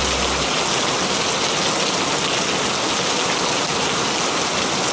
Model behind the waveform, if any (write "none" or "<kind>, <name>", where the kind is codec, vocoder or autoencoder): none